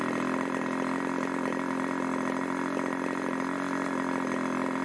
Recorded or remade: recorded